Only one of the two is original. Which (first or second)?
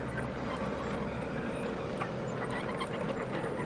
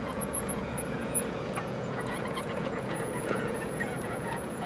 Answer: first